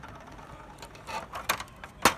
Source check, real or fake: real